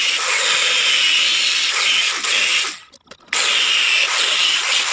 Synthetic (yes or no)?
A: no